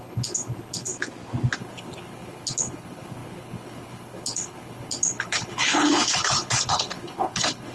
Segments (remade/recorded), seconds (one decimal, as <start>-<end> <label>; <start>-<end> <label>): 0.0-0.9 remade; 0.9-1.6 recorded; 1.6-7.7 remade